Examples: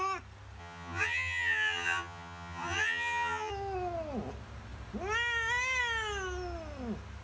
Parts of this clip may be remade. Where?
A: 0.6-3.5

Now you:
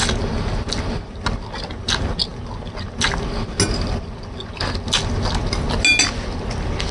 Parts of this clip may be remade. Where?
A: none

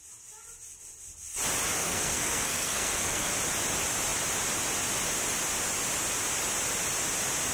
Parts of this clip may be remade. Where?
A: 1.8-3.3

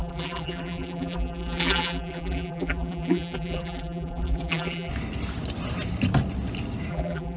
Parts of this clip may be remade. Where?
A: 0.0-4.9; 6.9-7.4

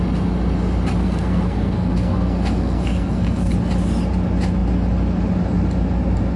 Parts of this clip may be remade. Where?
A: 1.0-3.5